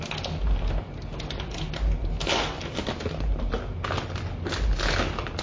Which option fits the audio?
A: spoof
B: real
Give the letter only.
B